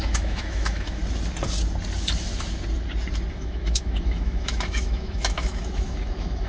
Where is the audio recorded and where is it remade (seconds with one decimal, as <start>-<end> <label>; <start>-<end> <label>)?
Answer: 0.0-1.0 remade; 1.0-3.3 recorded; 3.3-6.5 remade